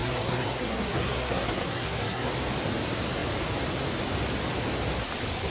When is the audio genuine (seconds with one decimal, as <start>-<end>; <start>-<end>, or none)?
2.3-5.5

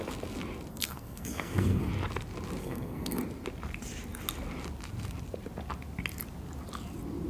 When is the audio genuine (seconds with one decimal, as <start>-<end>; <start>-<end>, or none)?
0.0-0.7; 1.9-2.6; 3.2-7.3

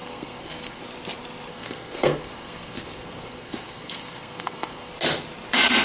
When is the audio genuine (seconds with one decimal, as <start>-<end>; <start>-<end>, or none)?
0.8-1.5; 4.9-5.8